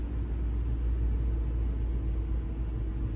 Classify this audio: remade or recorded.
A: recorded